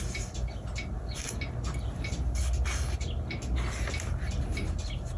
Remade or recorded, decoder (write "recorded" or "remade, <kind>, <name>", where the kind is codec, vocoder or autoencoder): recorded